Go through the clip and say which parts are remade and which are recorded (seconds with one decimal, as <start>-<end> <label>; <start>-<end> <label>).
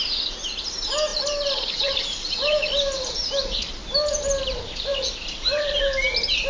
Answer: 0.0-1.1 recorded; 1.1-3.3 remade; 3.3-4.9 recorded; 4.9-5.8 remade; 5.8-6.5 recorded